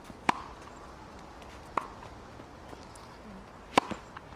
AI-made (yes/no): no